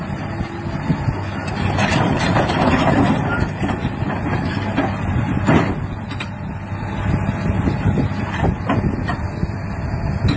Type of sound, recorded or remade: recorded